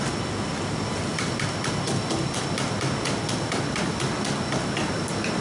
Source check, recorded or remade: recorded